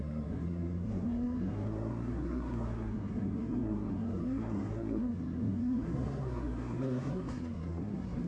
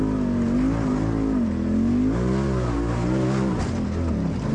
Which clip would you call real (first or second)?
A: second